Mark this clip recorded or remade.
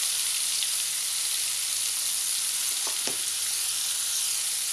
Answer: recorded